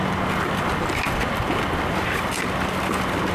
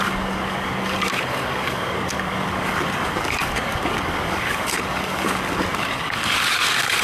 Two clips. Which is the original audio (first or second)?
first